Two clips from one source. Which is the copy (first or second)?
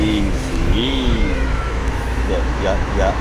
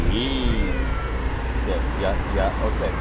first